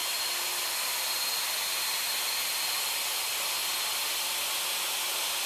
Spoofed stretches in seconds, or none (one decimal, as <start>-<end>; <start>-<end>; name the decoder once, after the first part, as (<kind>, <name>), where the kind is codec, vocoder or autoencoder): 0.0-3.3 (vocoder, BigVGAN v2)